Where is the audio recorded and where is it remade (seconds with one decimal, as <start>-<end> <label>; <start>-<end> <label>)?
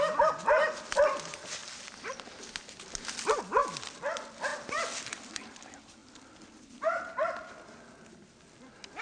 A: 0.0-9.0 recorded